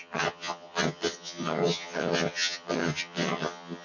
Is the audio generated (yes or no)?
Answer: yes